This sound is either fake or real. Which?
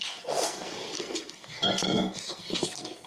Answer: fake